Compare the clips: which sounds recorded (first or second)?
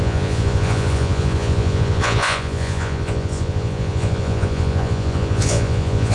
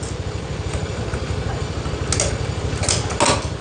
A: second